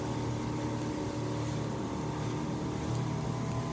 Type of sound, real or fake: real